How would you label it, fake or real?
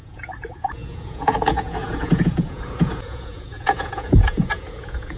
fake